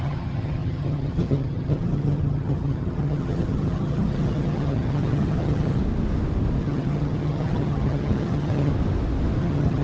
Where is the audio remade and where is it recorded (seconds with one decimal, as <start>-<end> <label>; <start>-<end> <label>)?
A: 0.0-5.8 remade; 5.8-6.6 recorded; 6.6-8.7 remade; 8.7-9.4 recorded; 9.4-9.8 remade